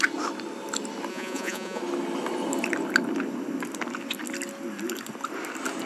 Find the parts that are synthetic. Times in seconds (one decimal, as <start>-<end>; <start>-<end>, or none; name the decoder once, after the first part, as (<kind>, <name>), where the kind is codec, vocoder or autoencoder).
1.1-1.8 (vocoder, Vocos)